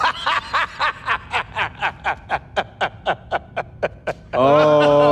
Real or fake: real